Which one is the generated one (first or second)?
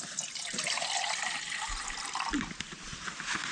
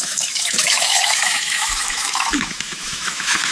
second